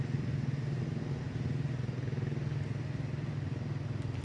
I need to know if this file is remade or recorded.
recorded